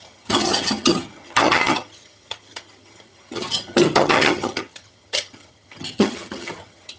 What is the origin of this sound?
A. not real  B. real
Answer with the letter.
A